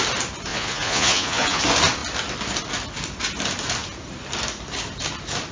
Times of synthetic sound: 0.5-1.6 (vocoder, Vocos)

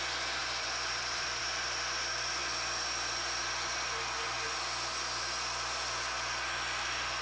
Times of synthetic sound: 0.4-1.4 (vocoder, BigVGAN v2)